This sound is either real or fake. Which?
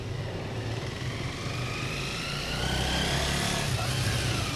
real